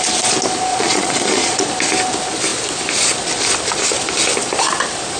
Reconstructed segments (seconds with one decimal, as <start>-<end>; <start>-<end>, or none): 0.7-1.7